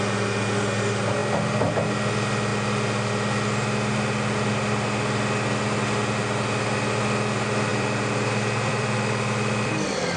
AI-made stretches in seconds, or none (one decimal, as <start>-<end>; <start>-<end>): 7.7-10.2